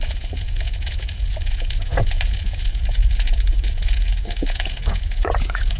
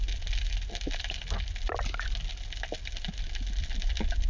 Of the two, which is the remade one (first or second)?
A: first